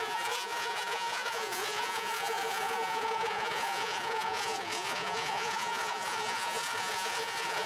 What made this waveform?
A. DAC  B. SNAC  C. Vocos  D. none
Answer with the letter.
C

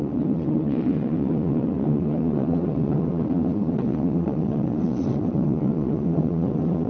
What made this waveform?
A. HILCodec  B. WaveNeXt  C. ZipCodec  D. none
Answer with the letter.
B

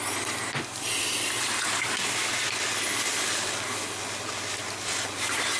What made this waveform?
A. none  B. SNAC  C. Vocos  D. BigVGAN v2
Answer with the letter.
A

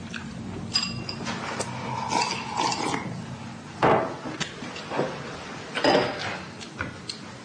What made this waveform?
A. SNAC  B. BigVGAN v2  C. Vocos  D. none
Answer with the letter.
D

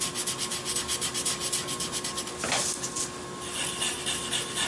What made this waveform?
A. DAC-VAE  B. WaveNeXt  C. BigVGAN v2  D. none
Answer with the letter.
D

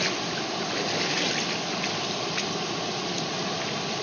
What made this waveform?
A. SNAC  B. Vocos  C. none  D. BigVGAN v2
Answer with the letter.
C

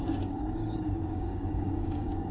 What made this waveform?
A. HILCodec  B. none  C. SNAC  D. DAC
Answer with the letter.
D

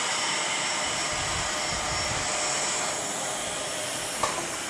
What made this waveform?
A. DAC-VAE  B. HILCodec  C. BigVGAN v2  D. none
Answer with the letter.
D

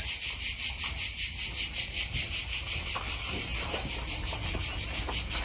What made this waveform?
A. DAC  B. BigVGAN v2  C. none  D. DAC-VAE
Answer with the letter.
C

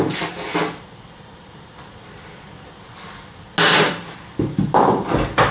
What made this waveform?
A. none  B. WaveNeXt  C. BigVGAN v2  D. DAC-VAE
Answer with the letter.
A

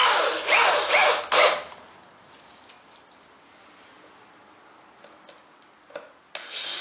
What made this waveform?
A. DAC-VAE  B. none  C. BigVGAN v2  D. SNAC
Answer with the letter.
B